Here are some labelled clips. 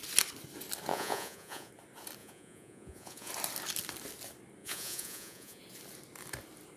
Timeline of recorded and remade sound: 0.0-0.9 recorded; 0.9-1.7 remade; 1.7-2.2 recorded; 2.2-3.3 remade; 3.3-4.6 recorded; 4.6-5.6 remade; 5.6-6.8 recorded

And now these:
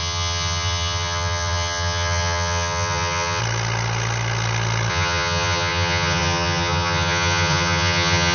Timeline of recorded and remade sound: 0.0-3.4 remade; 3.4-4.9 recorded; 4.9-8.3 remade

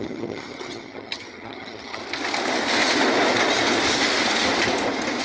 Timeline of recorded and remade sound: 0.0-2.0 remade; 2.0-5.2 recorded

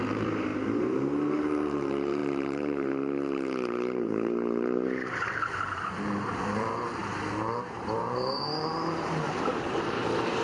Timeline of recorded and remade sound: 0.0-0.5 remade; 0.5-1.3 recorded; 1.3-10.4 remade

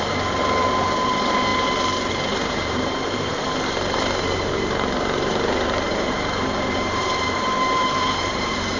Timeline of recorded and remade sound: 0.0-1.5 remade; 1.5-2.1 recorded; 2.1-3.3 remade; 3.3-4.0 recorded; 4.0-8.8 remade

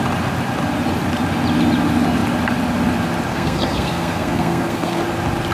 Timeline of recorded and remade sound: 0.0-3.3 recorded; 3.3-5.0 remade; 5.0-5.5 recorded